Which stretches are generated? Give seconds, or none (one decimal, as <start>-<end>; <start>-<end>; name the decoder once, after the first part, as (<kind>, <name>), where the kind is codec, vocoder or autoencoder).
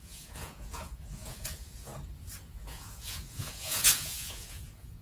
0.0-1.9 (vocoder, Vocos); 2.4-5.0